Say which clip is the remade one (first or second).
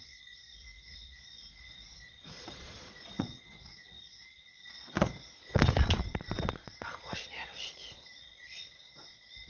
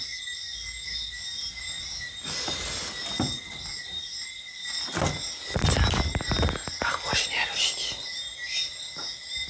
first